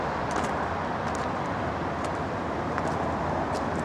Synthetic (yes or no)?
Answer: no